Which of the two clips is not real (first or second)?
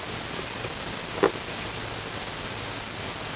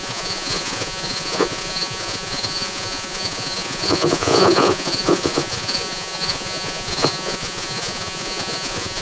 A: second